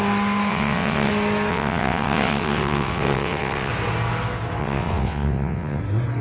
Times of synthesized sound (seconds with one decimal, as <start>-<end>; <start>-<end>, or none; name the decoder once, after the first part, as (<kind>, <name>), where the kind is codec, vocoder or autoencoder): 0.5-1.1 (vocoder, WaveNeXt); 1.5-3.7; 4.6-5.8